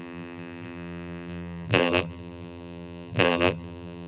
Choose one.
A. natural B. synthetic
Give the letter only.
B